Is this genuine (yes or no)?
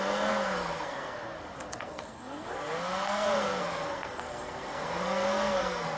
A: no